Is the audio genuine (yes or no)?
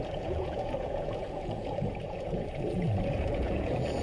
no